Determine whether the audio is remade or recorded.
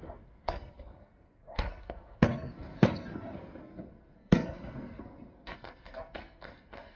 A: remade